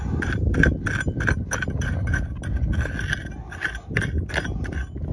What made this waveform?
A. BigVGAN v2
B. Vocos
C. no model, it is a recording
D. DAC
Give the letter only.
C